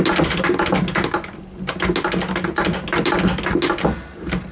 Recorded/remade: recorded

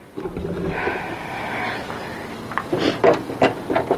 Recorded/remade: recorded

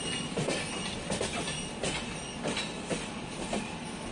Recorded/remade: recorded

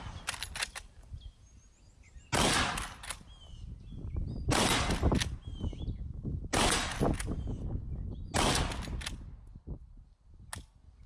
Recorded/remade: recorded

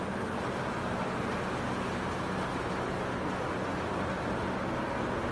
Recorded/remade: recorded